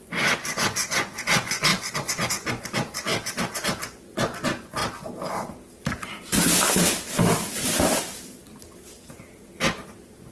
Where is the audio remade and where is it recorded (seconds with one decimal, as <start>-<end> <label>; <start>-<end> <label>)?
0.0-3.1 remade; 3.1-3.8 recorded; 3.8-4.8 remade; 4.8-9.9 recorded; 9.9-10.3 remade